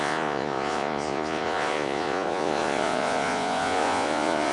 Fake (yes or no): yes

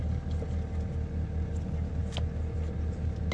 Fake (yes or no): no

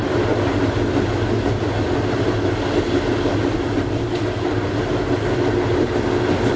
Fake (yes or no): no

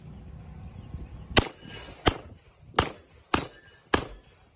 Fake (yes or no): no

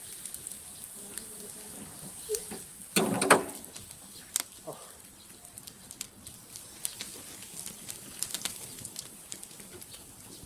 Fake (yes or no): no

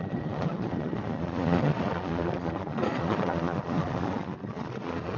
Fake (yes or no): yes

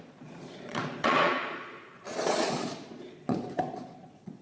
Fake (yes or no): yes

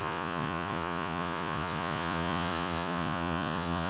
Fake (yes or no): yes